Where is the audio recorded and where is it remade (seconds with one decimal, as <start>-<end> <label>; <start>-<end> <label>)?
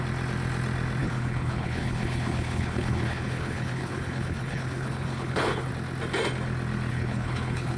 0.0-1.0 recorded; 1.0-5.7 remade; 5.7-6.9 recorded; 6.9-7.8 remade